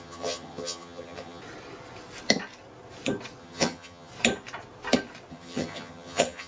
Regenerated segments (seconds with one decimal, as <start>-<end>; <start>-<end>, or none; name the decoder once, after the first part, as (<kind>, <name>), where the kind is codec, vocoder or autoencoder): 0.0-1.4 (vocoder, HiFi-GAN); 3.4-4.1; 5.3-6.5